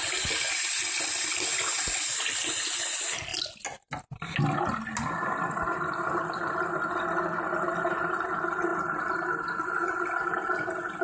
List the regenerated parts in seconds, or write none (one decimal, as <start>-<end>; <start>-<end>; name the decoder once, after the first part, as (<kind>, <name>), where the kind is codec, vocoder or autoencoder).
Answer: none